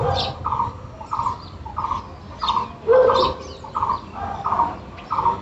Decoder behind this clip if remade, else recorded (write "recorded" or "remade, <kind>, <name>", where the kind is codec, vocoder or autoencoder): recorded